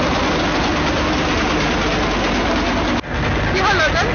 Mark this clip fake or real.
real